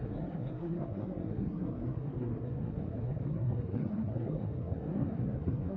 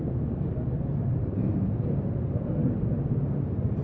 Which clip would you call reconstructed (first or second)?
first